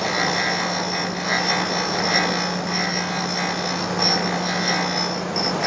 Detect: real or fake real